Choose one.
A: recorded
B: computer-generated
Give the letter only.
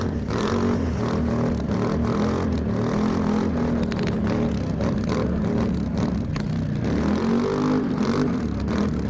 A